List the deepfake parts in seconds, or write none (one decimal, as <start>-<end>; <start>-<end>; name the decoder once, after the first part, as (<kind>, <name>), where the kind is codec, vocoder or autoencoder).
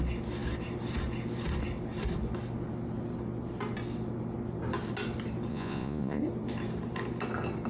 5.5-6.2 (vocoder, Vocos)